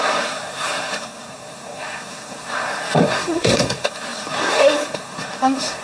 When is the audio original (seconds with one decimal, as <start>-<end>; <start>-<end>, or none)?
none